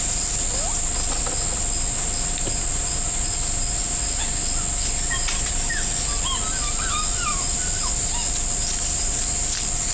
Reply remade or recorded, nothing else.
recorded